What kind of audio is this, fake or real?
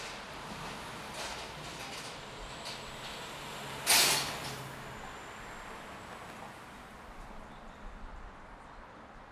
real